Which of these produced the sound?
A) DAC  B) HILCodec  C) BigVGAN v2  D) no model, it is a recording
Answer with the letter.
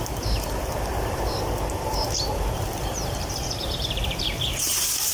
C